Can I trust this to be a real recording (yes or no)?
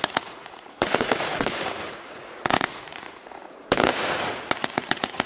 no